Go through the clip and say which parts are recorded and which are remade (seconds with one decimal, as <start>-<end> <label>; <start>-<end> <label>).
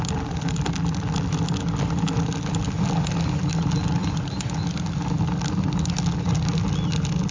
0.0-7.3 recorded